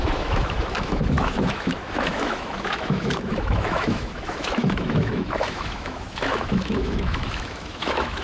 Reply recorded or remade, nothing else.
remade